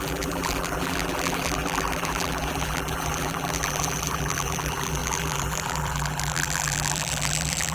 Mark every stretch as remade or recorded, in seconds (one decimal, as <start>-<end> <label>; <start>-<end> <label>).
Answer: 0.0-7.7 remade